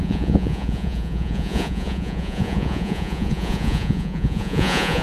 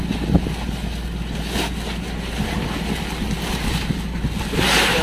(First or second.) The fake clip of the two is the first